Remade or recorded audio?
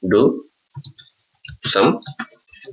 recorded